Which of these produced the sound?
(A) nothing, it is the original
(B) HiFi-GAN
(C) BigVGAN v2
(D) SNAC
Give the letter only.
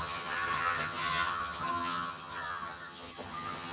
B